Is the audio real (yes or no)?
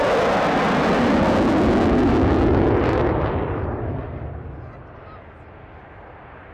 yes